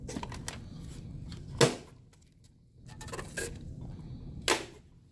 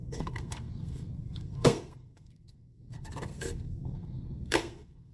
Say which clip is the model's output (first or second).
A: second